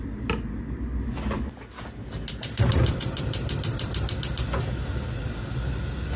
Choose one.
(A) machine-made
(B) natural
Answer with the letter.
B